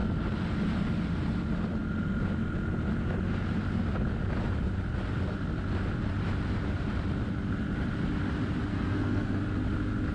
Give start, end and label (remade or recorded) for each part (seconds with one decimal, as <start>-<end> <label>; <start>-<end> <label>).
0.0-8.7 recorded; 8.7-9.4 remade; 9.4-10.1 recorded